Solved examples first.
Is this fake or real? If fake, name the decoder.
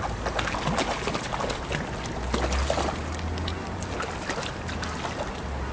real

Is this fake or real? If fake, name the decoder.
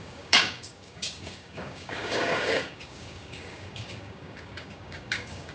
fake, codec, DAC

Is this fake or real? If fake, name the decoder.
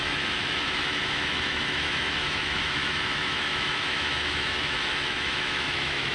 fake, autoencoder, DAC-VAE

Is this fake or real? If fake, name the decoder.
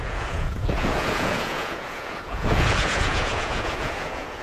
fake, vocoder, Vocos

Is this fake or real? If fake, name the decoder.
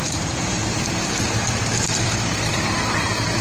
fake, vocoder, BigVGAN v2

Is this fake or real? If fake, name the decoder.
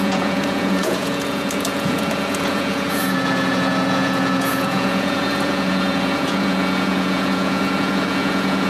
fake, vocoder, Vocos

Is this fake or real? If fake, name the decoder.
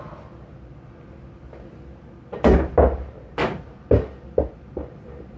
real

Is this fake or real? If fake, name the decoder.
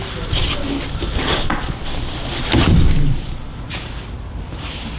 real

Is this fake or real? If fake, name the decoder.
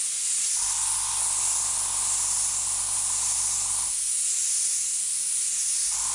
real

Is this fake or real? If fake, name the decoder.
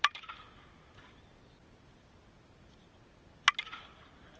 real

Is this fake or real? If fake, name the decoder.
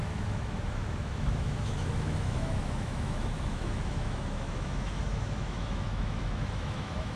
fake, autoencoder, DAC-VAE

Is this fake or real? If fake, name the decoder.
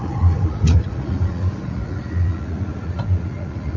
fake, vocoder, Vocos